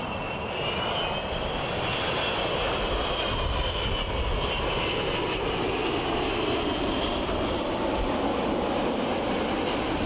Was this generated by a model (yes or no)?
no